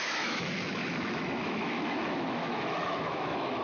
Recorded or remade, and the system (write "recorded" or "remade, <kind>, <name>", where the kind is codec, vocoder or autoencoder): remade, autoencoder, DAC-VAE